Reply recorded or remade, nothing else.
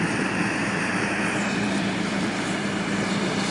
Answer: remade